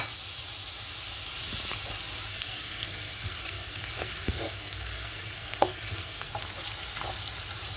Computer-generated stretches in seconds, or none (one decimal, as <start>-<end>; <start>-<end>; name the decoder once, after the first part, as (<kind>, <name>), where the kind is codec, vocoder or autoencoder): 2.3-6.3 (codec, SNAC)